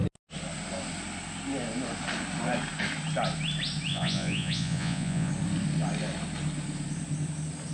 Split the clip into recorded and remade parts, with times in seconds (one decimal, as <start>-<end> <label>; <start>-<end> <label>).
0.0-3.9 recorded; 3.9-5.3 remade; 5.3-7.7 recorded